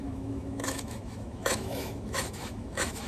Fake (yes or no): yes